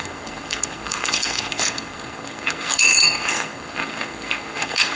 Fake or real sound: fake